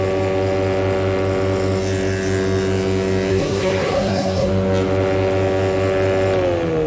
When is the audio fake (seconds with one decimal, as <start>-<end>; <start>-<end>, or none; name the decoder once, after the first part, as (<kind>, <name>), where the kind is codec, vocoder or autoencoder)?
3.3-4.5 (codec, SNAC)